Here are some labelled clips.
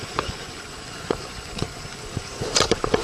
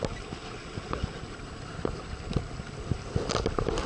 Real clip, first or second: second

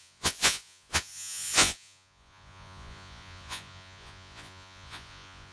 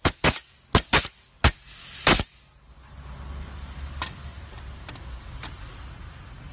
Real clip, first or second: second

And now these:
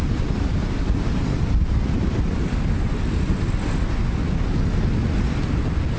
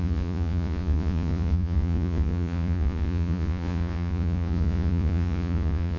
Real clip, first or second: first